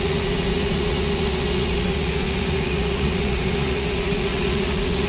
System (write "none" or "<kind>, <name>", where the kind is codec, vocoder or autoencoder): vocoder, Vocos